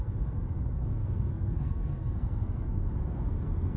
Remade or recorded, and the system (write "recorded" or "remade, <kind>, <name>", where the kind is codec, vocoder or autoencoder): remade, codec, SNAC